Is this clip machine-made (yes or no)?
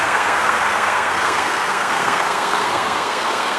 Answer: yes